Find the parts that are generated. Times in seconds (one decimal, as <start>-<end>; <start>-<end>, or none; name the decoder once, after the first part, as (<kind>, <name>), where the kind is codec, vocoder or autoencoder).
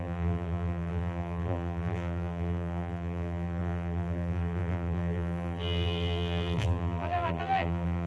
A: 0.0-8.1 (vocoder, BigVGAN v2)